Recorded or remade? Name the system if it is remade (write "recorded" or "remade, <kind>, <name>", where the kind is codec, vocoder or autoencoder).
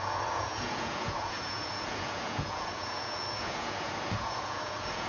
remade, vocoder, Vocos